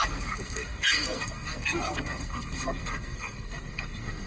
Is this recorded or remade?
remade